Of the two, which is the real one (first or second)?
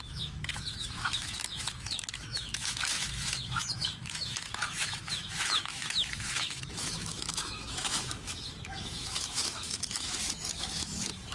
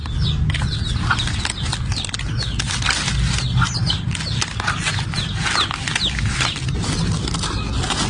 second